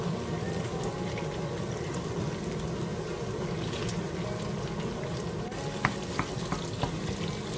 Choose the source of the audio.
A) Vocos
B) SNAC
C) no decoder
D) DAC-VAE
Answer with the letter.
C